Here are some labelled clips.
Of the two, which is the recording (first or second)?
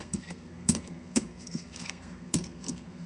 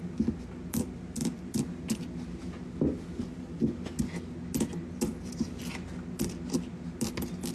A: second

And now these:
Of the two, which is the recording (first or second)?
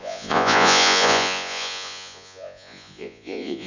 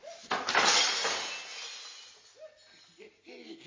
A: second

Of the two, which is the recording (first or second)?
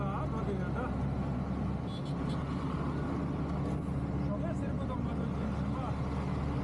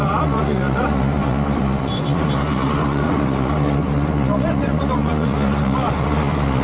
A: first